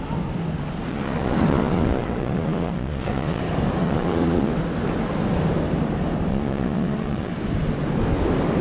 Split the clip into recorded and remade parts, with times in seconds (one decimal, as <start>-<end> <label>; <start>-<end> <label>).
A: 0.0-0.9 recorded; 0.9-3.4 remade; 3.4-3.8 recorded; 3.8-4.5 remade; 4.5-6.3 recorded; 6.3-7.3 remade; 7.3-8.6 recorded